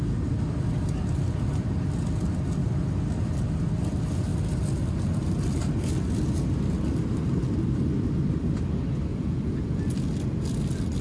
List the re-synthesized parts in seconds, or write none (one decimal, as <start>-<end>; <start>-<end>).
9.1-9.8